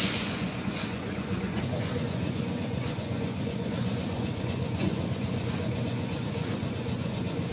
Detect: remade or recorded remade